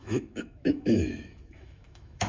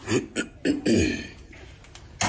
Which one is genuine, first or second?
second